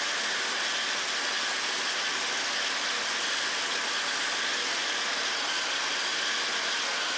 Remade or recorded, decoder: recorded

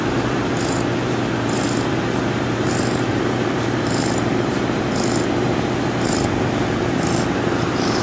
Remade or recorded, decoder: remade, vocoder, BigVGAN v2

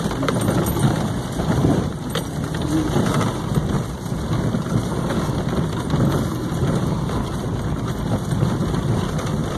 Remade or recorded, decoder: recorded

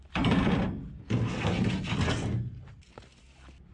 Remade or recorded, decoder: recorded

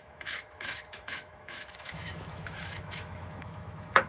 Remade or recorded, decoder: remade, autoencoder, DAC-VAE